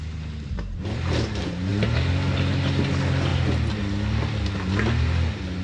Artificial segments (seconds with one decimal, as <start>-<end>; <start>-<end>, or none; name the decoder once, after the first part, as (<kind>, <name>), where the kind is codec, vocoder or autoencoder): none